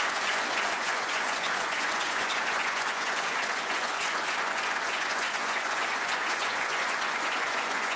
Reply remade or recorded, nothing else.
remade